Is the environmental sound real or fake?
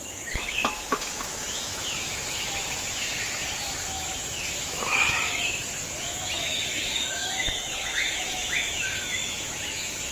fake